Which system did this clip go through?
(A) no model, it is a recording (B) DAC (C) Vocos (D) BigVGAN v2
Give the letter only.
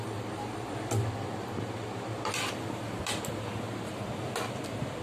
A